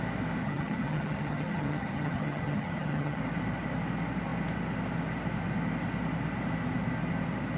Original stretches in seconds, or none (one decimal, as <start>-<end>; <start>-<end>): 0.0-0.4; 3.2-7.6